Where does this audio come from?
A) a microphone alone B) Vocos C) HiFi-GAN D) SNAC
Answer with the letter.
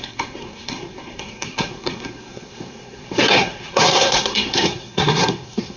D